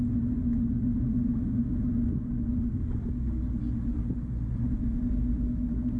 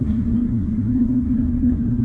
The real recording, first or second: first